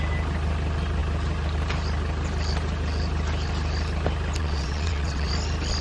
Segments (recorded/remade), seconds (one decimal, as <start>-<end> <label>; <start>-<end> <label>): 0.0-4.4 recorded; 4.4-5.3 remade; 5.3-5.8 recorded